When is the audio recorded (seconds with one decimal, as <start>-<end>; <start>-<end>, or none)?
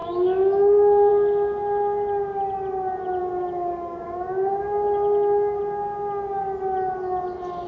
1.1-3.2; 5.6-7.7